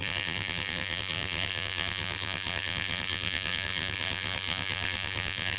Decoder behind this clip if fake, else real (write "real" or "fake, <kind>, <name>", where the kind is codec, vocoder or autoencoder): fake, vocoder, BigVGAN v2